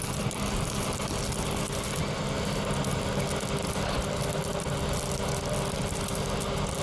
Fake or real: real